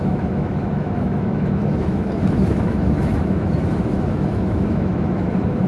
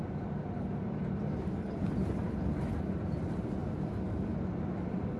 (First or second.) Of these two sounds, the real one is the second